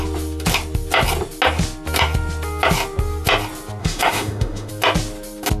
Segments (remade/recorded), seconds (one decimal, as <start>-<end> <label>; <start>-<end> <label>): 0.0-3.8 recorded; 3.8-4.7 remade; 4.7-5.6 recorded